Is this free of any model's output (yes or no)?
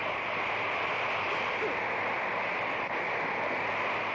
yes